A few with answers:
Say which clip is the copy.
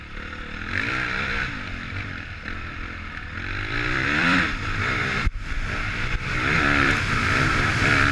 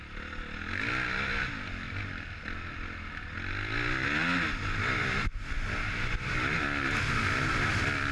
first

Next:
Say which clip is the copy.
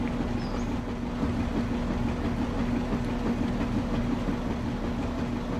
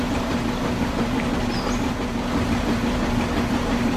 second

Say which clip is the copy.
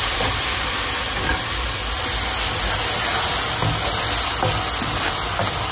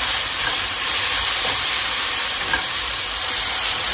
second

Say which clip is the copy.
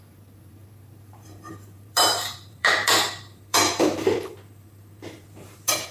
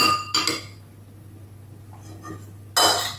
first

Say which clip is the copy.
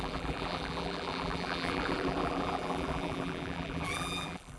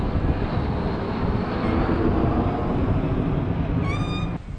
first